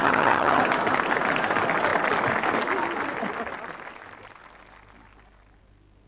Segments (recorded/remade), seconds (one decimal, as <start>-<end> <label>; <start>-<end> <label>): 0.0-0.6 remade; 0.6-6.1 recorded